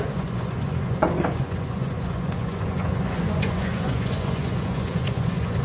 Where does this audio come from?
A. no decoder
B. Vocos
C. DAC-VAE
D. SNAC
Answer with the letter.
B